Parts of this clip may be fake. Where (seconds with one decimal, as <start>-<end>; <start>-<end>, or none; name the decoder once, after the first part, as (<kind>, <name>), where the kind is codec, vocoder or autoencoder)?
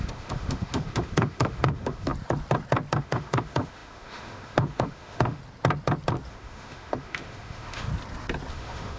0.0-2.1 (autoencoder, DAC-VAE); 3.0-5.4; 6.3-7.9; 8.5-9.0